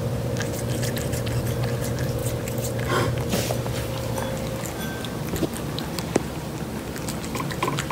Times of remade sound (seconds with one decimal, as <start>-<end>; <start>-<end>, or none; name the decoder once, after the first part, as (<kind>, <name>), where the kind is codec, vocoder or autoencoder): none